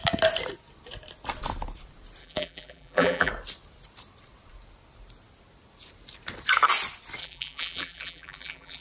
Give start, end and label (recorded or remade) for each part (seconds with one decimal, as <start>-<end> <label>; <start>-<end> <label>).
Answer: 0.0-2.2 recorded; 2.2-3.3 remade; 3.3-7.2 recorded; 7.2-8.8 remade